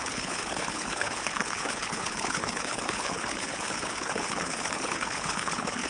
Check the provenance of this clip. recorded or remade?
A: remade